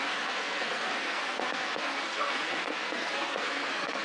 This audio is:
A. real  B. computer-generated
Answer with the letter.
B